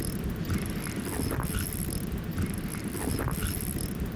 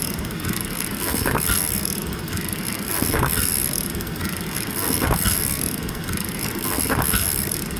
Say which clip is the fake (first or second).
second